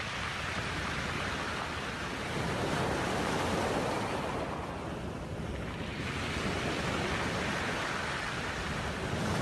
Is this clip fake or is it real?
real